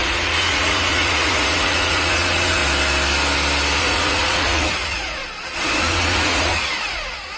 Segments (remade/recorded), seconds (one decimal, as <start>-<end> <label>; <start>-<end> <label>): 0.0-2.6 remade; 2.6-3.8 recorded; 3.8-5.2 remade; 5.2-5.8 recorded; 5.8-7.4 remade